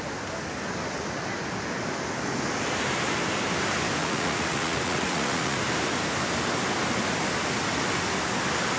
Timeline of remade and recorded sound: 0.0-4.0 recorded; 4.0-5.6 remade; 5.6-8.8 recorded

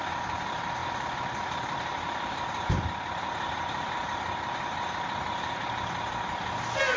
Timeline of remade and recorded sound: 0.0-7.0 recorded

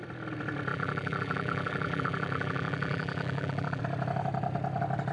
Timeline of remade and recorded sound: 0.0-0.7 recorded; 0.7-3.8 remade; 3.8-5.1 recorded